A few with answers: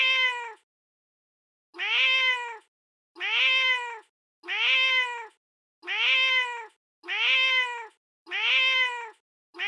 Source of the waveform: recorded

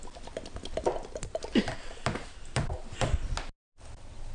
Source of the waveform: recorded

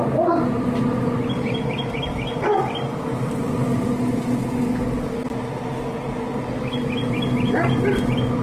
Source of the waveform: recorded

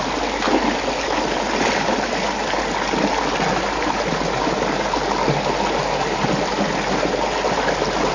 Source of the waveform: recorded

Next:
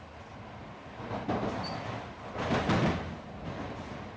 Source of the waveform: recorded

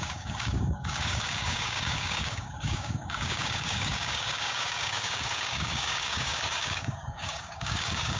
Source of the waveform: remade